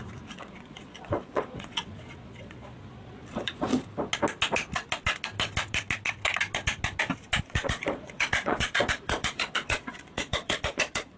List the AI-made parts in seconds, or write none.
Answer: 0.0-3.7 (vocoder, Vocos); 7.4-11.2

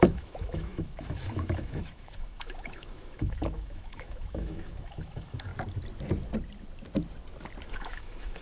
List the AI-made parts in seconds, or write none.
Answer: 0.0-5.5 (autoencoder, DAC-VAE); 7.6-8.4

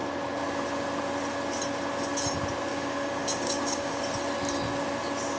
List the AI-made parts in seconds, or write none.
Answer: 2.7-4.0 (codec, DAC)

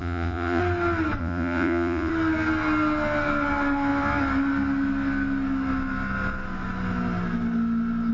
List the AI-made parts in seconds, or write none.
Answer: 0.0-0.6 (vocoder, Vocos); 1.2-2.1

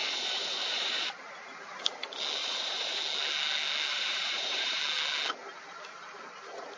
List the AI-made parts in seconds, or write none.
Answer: 0.0-1.3 (vocoder, BigVGAN v2); 2.4-3.0; 3.9-4.8

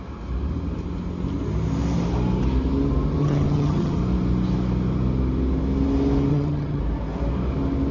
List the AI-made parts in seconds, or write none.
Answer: 3.2-4.0 (vocoder, HiFi-GAN); 6.3-6.8